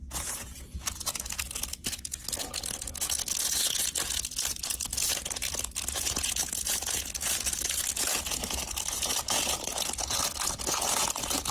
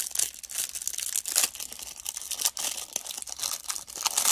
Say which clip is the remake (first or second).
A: first